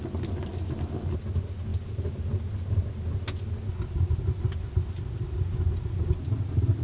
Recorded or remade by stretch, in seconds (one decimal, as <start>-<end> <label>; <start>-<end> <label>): 0.0-6.8 recorded